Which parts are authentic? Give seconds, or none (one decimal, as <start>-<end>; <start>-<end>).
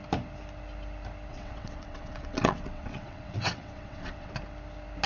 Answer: 0.0-1.3; 4.4-5.1